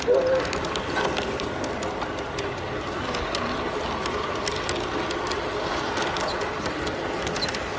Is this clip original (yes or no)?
yes